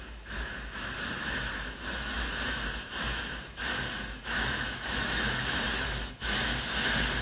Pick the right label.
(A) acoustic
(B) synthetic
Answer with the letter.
B